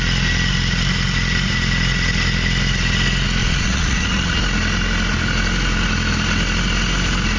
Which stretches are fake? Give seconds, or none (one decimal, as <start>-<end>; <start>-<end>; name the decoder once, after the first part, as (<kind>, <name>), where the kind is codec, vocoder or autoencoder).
3.4-4.4 (vocoder, Vocos)